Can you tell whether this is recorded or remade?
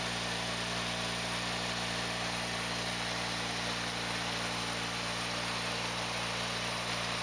recorded